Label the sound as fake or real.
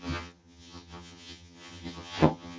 fake